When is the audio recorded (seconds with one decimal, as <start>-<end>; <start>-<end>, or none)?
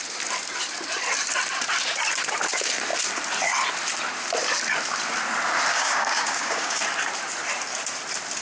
0.0-5.7; 6.8-8.4